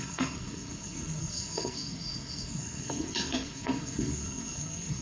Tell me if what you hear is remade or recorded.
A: remade